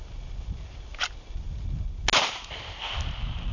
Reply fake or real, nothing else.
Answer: real